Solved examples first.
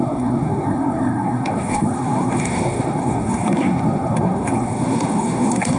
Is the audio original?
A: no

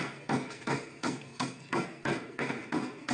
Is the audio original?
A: no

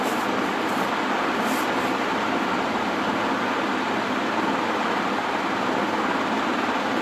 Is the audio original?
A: yes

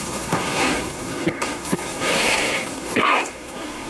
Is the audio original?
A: no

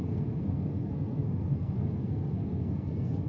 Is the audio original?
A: no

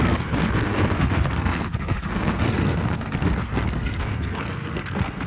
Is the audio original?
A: no